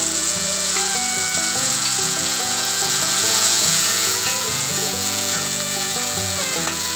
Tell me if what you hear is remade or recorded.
remade